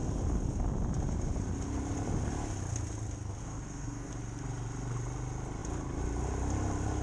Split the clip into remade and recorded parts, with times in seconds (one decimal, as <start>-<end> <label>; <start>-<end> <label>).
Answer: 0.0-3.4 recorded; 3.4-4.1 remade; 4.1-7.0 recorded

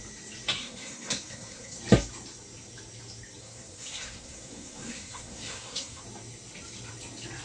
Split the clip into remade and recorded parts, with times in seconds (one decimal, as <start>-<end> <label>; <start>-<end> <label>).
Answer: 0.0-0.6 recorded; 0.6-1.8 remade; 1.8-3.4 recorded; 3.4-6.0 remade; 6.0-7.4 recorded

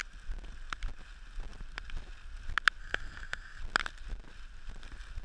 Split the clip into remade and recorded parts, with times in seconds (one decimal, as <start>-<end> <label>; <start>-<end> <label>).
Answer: 0.0-2.8 recorded; 2.8-3.6 remade; 3.6-5.2 recorded

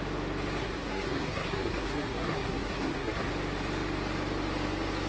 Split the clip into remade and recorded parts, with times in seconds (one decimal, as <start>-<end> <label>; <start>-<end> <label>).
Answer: 0.0-0.6 recorded; 0.6-3.3 remade; 3.3-5.1 recorded

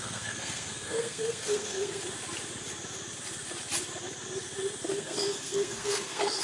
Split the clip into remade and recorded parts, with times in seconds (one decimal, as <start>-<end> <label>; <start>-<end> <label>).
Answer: 0.0-2.0 remade; 2.0-4.9 recorded; 4.9-6.4 remade

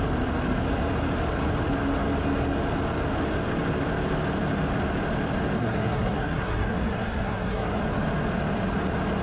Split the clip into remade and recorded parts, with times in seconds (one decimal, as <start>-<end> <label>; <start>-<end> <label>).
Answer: 0.0-5.6 recorded; 5.6-7.8 remade; 7.8-9.2 recorded